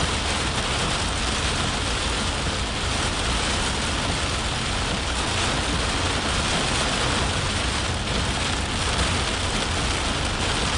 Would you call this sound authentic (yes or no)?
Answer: yes